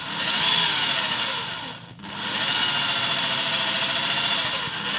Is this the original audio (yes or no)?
yes